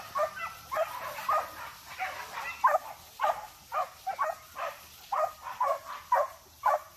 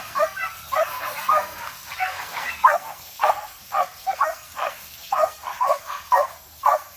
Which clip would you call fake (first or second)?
second